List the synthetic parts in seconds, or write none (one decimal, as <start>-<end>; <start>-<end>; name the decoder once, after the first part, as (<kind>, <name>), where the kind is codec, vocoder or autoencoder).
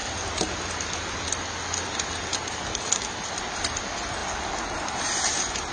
none